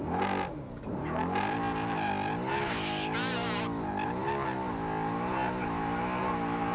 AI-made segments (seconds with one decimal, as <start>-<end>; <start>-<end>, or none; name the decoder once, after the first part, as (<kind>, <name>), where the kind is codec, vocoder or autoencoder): none